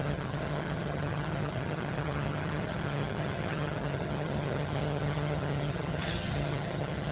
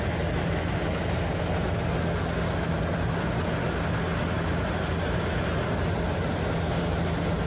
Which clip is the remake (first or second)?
first